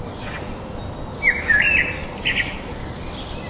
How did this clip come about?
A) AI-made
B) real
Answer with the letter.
B